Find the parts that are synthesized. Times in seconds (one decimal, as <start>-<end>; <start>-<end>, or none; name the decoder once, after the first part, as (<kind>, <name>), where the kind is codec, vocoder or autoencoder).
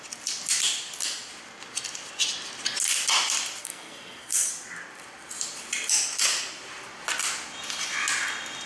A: 3.6-4.5 (codec, SNAC)